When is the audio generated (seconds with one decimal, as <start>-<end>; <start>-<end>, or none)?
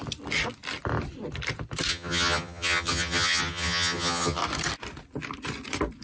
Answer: 1.9-4.4